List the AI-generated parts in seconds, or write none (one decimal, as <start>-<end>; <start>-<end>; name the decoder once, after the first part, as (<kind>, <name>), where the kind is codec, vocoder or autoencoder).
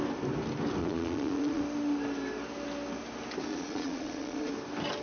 0.8-1.6 (vocoder, Vocos); 3.5-4.5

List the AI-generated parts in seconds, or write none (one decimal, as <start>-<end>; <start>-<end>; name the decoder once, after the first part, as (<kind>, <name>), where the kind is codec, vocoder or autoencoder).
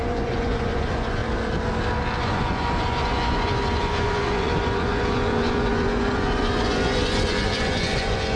0.0-1.2 (vocoder, Vocos); 2.2-8.4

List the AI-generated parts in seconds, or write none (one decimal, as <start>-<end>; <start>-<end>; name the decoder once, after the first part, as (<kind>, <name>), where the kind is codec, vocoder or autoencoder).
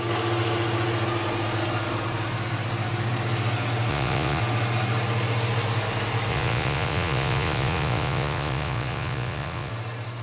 3.9-4.4 (vocoder, Vocos); 6.3-9.7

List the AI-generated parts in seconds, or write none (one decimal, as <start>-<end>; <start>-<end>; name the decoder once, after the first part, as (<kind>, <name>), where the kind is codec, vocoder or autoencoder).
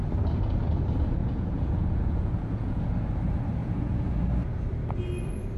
1.2-2.8 (vocoder, Vocos); 3.6-4.2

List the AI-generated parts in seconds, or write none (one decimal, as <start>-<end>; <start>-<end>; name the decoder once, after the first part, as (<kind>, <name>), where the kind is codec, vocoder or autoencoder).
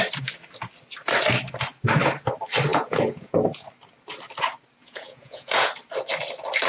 2.7-3.7 (vocoder, Vocos); 4.8-5.7